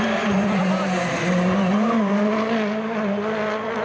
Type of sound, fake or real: fake